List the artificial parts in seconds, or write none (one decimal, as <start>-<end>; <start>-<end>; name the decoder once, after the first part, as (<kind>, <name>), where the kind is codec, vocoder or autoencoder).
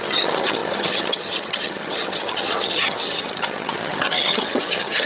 0.0-5.1 (vocoder, HiFi-GAN)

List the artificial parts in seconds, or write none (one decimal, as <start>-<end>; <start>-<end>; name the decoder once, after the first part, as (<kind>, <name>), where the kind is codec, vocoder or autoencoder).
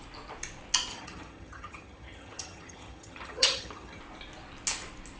0.9-4.0 (vocoder, HiFi-GAN)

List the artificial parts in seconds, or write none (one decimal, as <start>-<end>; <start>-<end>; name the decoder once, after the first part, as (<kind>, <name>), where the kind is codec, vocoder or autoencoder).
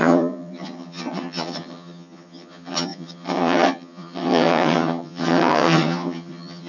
0.0-6.7 (vocoder, HiFi-GAN)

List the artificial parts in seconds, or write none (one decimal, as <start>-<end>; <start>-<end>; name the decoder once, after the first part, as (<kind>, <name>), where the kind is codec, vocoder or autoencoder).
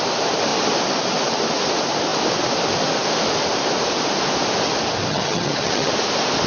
5.1-5.9 (vocoder, HiFi-GAN)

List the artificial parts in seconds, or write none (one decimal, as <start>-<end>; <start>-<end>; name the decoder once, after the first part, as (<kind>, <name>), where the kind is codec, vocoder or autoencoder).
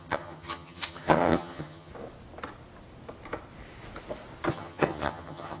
0.0-1.9 (vocoder, HiFi-GAN); 4.5-5.6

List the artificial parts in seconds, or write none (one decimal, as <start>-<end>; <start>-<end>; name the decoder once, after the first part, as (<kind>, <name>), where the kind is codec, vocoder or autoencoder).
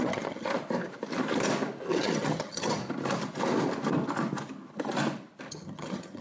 0.0-0.5 (vocoder, HiFi-GAN); 1.9-2.8; 5.5-6.2